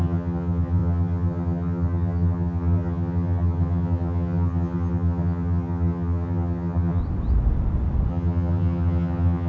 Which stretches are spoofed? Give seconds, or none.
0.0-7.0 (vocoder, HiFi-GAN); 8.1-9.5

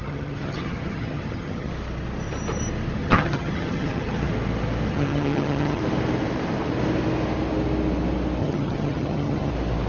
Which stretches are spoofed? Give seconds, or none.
0.0-1.7 (vocoder, HiFi-GAN); 3.0-4.3; 4.9-5.8; 8.4-9.5

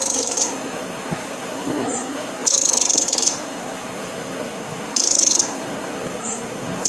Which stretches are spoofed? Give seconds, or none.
0.0-6.9 (codec, SNAC)

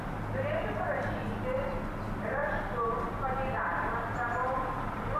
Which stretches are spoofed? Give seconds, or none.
2.4-3.5 (vocoder, BigVGAN v2)

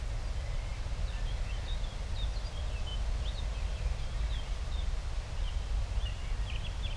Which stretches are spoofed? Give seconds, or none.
none

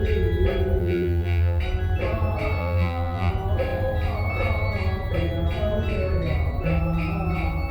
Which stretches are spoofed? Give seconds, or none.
0.8-1.6 (vocoder, BigVGAN v2); 2.6-3.3

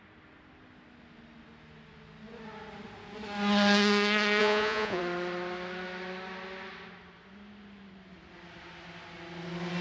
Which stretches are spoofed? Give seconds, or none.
4.4-5.0 (vocoder, Vocos)

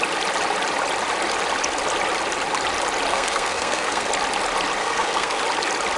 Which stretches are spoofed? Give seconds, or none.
3.1-4.1 (codec, SNAC); 4.8-5.4